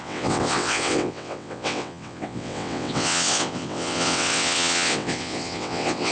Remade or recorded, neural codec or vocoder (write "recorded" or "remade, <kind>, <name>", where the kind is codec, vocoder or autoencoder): remade, vocoder, WaveNeXt